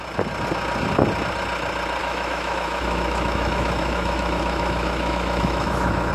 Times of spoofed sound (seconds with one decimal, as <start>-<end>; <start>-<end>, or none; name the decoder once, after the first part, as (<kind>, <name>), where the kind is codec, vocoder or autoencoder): 2.0-6.1 (autoencoder, DAC-VAE)